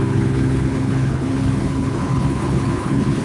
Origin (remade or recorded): remade